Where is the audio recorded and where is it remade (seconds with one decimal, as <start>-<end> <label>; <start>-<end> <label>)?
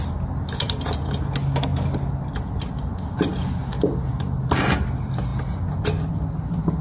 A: 0.0-6.8 recorded